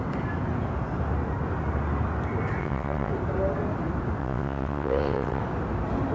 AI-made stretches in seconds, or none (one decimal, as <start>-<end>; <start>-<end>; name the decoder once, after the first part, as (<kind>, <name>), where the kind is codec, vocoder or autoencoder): 2.6-3.1 (vocoder, WaveNeXt); 4.2-5.4